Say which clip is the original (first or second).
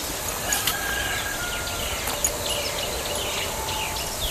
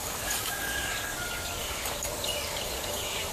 first